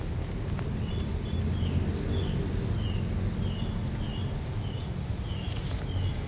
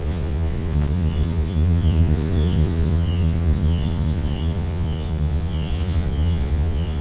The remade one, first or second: second